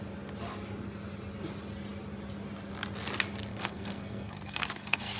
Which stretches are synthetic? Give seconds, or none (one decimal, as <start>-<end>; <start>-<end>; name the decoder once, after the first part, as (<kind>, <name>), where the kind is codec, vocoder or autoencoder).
3.5-5.2 (codec, SNAC)